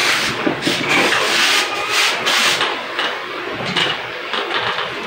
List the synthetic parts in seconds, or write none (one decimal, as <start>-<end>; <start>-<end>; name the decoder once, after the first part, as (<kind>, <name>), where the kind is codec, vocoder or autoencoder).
0.0-1.2 (codec, DAC); 2.7-3.4; 3.8-4.5